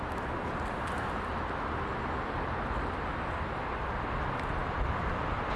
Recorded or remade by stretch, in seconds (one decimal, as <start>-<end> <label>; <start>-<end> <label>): 0.0-5.6 recorded